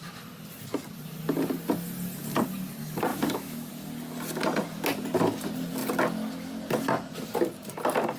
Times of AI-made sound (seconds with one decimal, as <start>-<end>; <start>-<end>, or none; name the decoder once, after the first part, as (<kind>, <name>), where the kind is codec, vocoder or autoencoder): 3.1-3.7 (autoencoder, DAC-VAE)